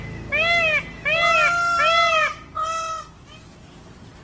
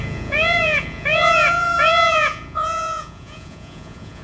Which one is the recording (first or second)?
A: first